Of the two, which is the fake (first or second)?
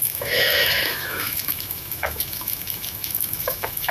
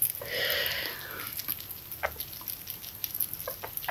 first